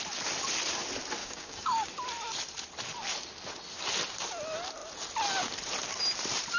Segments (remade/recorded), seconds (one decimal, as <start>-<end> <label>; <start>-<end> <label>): 0.0-1.2 recorded; 1.2-1.9 remade; 1.9-6.6 recorded